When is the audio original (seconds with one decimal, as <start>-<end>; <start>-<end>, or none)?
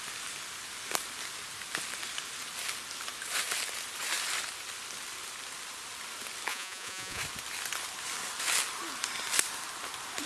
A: 0.0-6.5; 7.2-10.3